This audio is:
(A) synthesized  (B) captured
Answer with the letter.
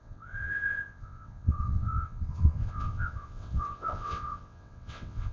A